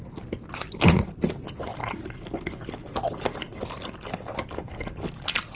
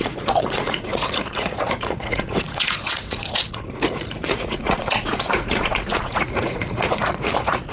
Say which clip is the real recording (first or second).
first